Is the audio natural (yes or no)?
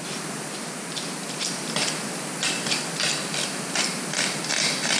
yes